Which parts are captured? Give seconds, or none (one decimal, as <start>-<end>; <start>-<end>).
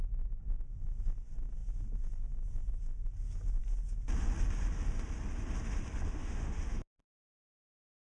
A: 0.0-6.2; 7.0-8.0